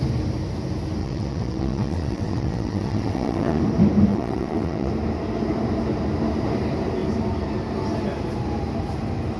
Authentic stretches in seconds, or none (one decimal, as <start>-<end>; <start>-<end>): 0.0-1.0; 3.6-4.1; 4.9-9.4